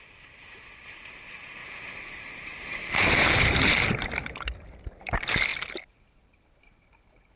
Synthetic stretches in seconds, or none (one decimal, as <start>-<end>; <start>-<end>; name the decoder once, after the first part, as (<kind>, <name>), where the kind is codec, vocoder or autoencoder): 1.6-4.1 (vocoder, BigVGAN v2)